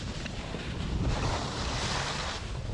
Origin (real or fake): fake